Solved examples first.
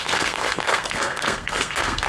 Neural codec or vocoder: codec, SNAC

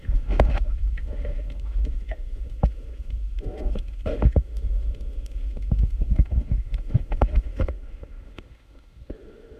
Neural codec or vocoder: autoencoder, DAC-VAE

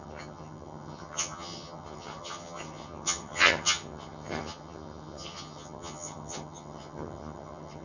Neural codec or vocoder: vocoder, HiFi-GAN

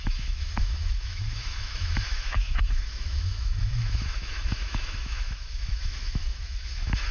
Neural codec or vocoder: autoencoder, DAC-VAE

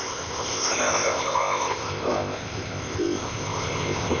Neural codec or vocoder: codec, ZipCodec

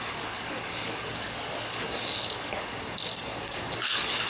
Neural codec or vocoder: codec, DAC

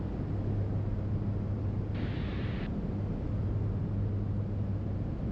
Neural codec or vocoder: none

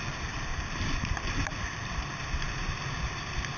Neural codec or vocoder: vocoder, BigVGAN v2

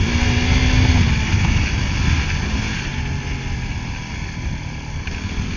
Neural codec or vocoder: none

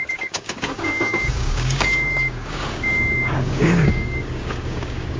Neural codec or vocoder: codec, DAC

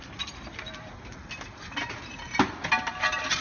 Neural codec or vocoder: none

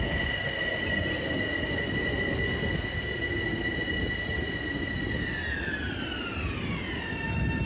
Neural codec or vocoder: none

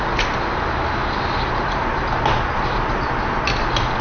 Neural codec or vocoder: none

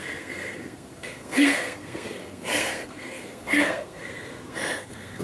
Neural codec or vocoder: codec, SNAC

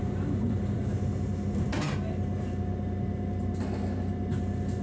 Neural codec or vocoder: none